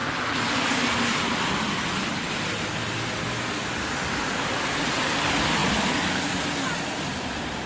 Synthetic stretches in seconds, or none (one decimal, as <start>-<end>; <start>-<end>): 0.0-4.6; 5.6-6.4